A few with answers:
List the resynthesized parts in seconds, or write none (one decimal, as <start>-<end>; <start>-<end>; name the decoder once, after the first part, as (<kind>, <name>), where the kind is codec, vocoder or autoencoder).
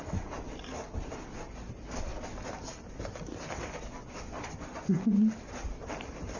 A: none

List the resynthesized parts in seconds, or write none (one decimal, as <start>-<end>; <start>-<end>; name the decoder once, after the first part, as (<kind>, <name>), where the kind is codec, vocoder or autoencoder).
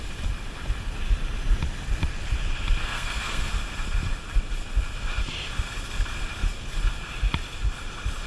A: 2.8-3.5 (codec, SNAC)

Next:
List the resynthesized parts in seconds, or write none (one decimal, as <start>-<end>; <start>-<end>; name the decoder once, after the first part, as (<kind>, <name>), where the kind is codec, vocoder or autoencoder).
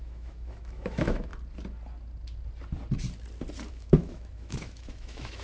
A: 0.0-1.3 (autoencoder, DAC-VAE); 3.7-5.4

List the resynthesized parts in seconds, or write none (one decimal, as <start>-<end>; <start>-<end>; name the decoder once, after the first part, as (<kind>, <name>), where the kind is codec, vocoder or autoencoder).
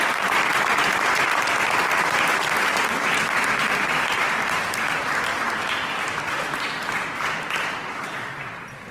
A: none